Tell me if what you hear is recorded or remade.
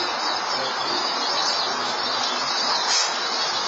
recorded